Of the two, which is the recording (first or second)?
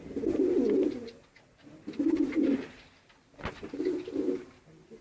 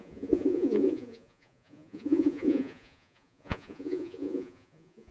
first